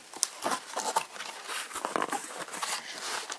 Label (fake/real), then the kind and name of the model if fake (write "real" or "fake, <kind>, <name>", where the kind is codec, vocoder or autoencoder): real